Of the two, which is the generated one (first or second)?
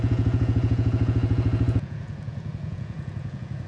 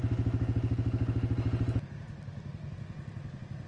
first